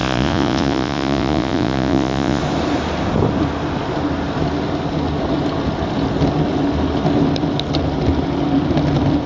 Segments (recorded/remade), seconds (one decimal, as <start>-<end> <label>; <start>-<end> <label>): 0.0-2.4 remade; 2.4-9.3 recorded